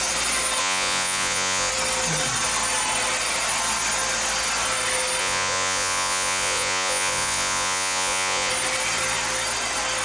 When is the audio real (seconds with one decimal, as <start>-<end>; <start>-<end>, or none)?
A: 0.0-0.6; 1.7-5.2; 8.5-10.0